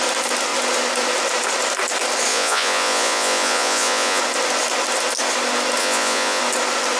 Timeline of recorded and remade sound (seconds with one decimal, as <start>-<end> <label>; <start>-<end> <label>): 0.0-2.3 recorded; 2.3-4.2 remade; 4.2-5.8 recorded; 5.8-6.4 remade; 6.4-7.0 recorded